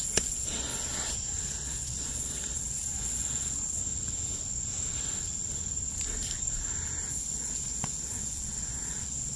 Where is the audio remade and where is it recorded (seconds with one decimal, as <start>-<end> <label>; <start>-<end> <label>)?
0.0-0.7 remade; 0.7-1.4 recorded; 1.4-3.8 remade; 3.8-7.1 recorded; 7.1-9.4 remade